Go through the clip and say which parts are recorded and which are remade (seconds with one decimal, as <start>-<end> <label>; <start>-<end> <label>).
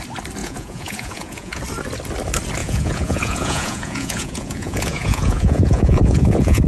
0.0-0.4 recorded; 0.4-1.6 remade; 1.6-2.6 recorded; 2.6-6.7 remade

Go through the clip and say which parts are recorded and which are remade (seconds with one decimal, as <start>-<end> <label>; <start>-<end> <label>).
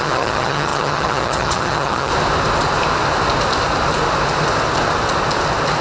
0.0-2.1 remade; 2.1-5.8 recorded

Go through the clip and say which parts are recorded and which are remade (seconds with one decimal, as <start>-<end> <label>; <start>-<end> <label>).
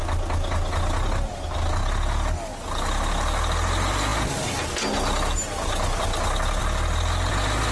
0.0-7.7 recorded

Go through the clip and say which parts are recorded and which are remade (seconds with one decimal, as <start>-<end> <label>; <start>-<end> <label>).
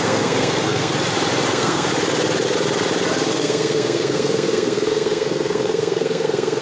0.0-0.9 remade; 0.9-1.5 recorded; 1.5-1.9 remade; 1.9-3.3 recorded; 3.3-6.6 remade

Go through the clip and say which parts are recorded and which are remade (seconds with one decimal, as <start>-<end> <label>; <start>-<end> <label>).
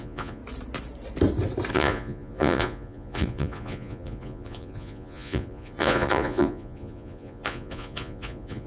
0.0-0.4 remade; 0.4-1.7 recorded; 1.7-8.7 remade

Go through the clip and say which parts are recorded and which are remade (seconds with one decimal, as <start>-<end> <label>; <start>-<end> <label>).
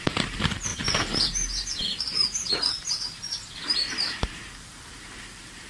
0.0-5.7 remade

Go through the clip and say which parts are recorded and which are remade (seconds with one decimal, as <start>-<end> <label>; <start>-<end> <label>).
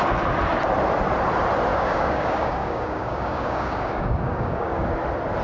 0.0-1.7 recorded; 1.7-4.9 remade; 4.9-5.4 recorded